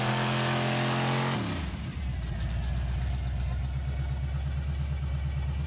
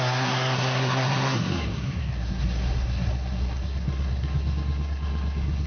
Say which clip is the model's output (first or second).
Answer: second